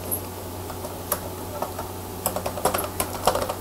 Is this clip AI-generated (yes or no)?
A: no